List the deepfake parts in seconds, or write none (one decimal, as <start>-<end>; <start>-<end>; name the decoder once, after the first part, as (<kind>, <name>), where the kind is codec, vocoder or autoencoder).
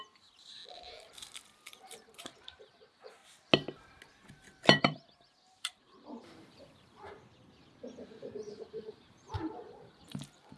0.0-0.6 (vocoder, BigVGAN v2); 1.8-3.2; 4.8-7.3; 8.2-10.6